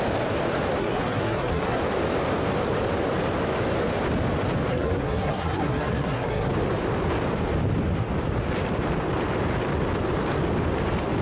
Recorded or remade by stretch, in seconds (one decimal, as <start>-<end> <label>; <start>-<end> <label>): 0.0-0.8 recorded; 0.8-1.8 remade; 1.8-4.7 recorded; 4.7-6.5 remade; 6.5-11.2 recorded